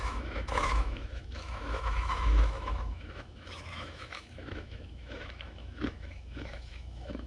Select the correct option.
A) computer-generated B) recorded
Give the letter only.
A